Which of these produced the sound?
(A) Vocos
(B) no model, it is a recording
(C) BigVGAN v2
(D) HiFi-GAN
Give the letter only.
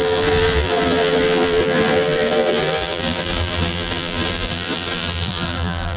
C